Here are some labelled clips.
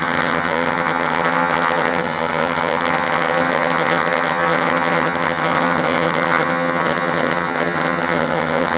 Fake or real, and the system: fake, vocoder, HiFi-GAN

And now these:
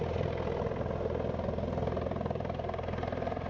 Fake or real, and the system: real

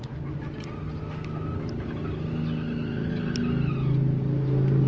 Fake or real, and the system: real